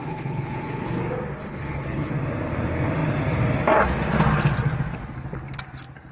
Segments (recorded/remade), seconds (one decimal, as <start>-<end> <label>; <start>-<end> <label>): 0.0-1.0 remade; 1.0-1.4 recorded; 1.4-2.1 remade; 2.1-6.1 recorded

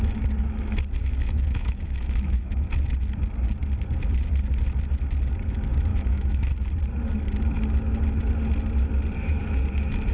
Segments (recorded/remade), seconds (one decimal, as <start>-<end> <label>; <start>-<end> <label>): 0.0-1.0 recorded; 1.0-2.7 remade; 2.7-5.9 recorded; 5.9-6.5 remade; 6.5-10.1 recorded

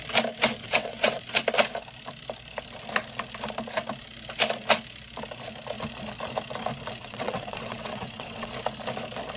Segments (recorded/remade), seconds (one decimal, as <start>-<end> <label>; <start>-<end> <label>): 0.0-0.6 recorded; 0.6-1.2 remade; 1.2-7.0 recorded; 7.0-8.5 remade; 8.5-9.4 recorded

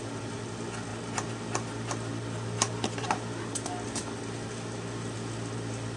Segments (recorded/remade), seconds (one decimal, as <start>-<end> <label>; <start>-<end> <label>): 0.0-6.0 recorded

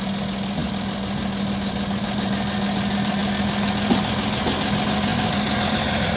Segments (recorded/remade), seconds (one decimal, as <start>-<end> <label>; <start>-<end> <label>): 0.0-5.1 recorded; 5.1-6.2 remade

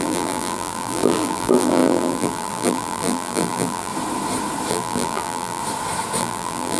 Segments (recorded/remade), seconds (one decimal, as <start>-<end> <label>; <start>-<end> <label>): 0.0-3.9 remade; 3.9-4.7 recorded; 4.7-5.6 remade; 5.6-6.2 recorded; 6.2-6.8 remade

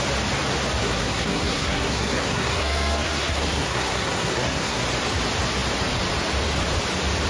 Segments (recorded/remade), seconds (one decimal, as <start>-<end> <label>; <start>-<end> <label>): 0.0-0.8 recorded; 0.8-4.8 remade; 4.8-7.3 recorded

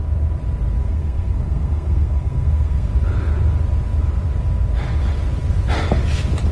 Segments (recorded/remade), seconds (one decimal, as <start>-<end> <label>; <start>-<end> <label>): 0.0-0.8 recorded; 0.8-2.9 remade; 2.9-6.5 recorded